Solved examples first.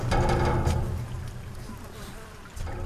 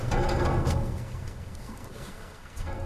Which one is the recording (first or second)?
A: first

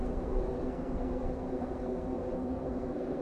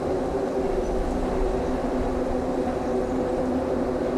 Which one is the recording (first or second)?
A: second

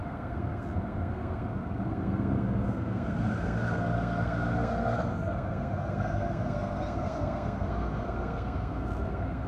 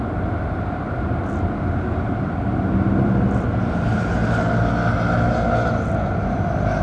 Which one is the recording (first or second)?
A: second